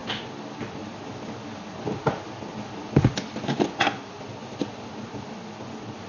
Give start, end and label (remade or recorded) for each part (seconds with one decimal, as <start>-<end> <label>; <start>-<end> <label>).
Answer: 0.0-6.1 recorded